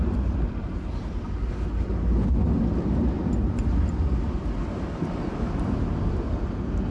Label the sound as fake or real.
real